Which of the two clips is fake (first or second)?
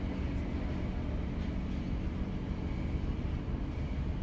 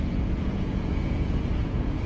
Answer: second